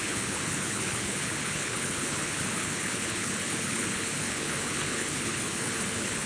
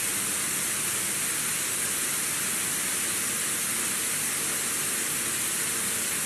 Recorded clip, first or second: second